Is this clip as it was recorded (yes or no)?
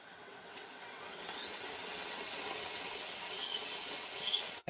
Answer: no